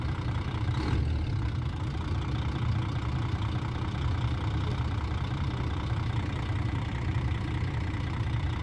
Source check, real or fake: real